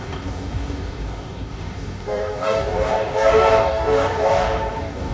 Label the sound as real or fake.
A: fake